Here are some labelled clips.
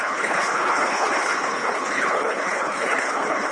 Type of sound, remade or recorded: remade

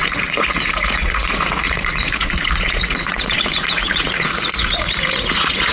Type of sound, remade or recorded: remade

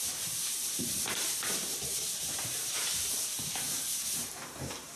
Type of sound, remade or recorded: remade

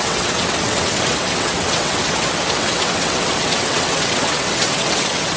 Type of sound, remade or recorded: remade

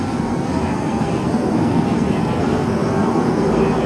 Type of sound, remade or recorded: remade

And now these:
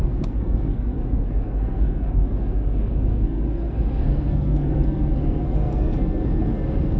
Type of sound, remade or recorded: remade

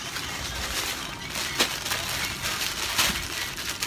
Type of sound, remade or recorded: recorded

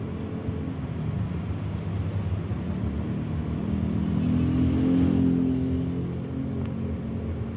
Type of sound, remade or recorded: recorded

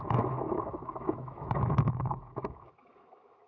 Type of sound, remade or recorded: remade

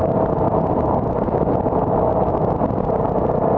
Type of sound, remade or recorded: recorded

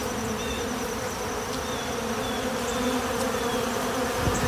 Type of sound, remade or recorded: recorded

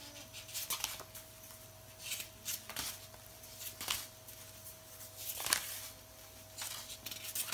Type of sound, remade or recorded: recorded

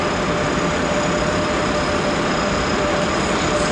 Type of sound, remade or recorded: recorded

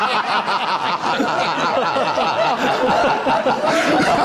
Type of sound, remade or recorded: recorded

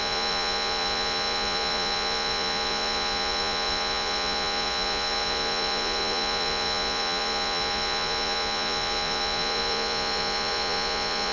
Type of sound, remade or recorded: remade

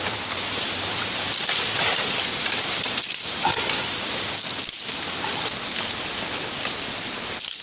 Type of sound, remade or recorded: recorded